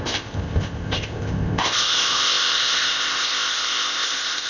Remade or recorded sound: remade